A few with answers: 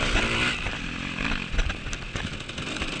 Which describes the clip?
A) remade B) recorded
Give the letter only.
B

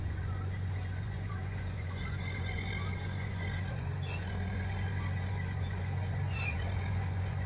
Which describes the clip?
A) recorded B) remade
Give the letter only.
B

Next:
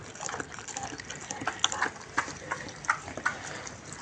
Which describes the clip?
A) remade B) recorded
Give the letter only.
B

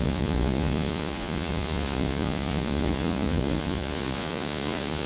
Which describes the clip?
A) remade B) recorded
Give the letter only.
A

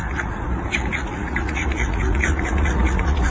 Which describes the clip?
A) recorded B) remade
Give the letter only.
B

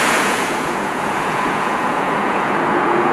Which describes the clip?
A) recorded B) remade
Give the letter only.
B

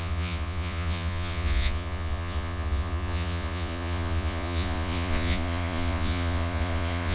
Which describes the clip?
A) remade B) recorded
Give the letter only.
A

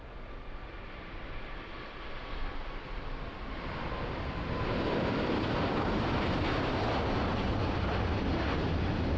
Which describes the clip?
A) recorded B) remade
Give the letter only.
A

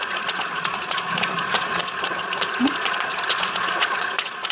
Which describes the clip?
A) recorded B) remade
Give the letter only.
B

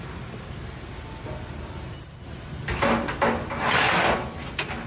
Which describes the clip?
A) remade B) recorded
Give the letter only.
B